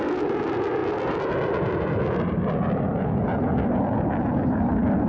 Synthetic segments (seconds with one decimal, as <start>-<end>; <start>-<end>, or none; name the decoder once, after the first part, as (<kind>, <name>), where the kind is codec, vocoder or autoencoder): none